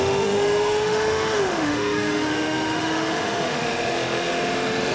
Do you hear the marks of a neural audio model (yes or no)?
yes